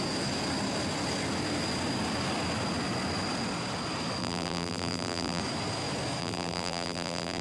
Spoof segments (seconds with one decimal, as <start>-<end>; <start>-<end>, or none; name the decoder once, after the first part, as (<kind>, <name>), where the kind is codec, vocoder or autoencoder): 4.2-5.4 (vocoder, BigVGAN v2); 6.2-7.4